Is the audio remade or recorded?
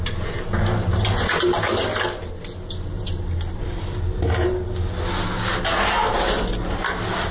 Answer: recorded